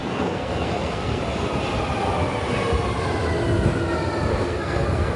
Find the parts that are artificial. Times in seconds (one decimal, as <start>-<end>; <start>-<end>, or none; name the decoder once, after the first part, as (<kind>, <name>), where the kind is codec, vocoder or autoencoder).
0.0-1.2 (codec, SNAC); 4.3-5.2